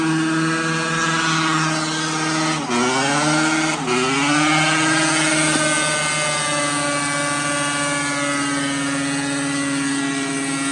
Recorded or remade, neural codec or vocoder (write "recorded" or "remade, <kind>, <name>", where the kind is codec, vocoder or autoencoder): recorded